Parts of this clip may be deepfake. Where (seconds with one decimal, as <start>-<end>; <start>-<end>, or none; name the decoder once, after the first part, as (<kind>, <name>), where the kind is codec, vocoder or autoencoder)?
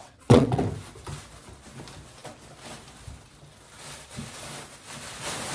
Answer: 0.0-0.6 (vocoder, WaveNeXt)